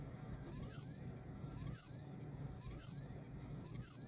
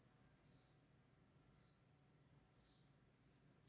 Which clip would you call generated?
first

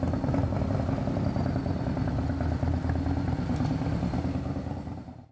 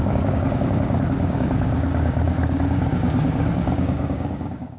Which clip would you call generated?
second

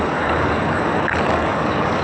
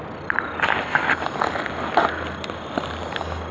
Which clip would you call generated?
first